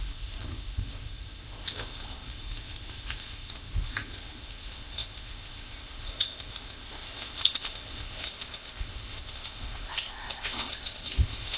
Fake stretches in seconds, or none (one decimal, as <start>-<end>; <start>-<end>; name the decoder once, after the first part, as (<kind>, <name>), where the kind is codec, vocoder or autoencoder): 0.0-11.6 (codec, ZipCodec)